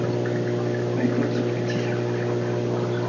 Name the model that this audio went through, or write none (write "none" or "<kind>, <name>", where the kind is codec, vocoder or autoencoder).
none